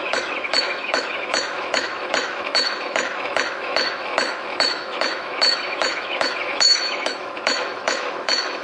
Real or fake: fake